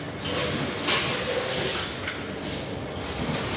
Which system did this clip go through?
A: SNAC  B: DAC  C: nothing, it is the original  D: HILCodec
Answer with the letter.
C